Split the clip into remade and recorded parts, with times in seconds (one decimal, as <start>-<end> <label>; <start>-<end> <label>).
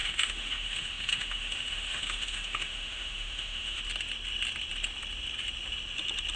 0.0-3.8 remade; 3.8-6.4 recorded